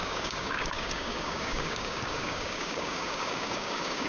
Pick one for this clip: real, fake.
fake